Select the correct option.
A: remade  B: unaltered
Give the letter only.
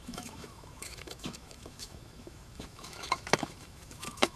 A